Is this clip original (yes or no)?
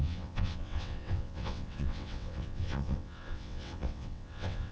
no